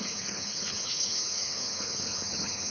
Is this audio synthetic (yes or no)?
yes